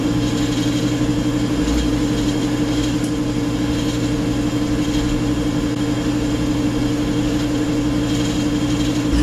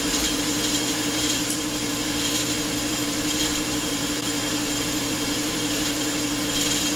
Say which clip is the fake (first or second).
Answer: second